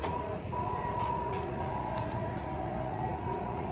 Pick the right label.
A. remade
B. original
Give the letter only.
A